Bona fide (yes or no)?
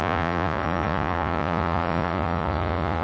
no